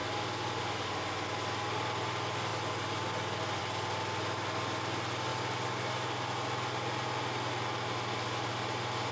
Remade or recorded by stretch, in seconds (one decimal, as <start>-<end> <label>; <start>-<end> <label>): 0.0-9.1 recorded